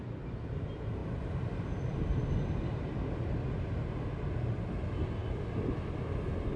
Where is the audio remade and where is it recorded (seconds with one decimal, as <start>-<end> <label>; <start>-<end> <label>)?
0.0-6.6 recorded